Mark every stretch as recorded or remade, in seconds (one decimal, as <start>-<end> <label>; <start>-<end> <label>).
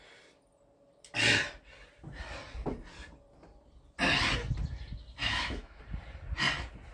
0.0-5.2 recorded; 5.2-5.8 remade; 5.8-6.9 recorded